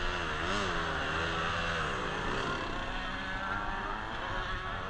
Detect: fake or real real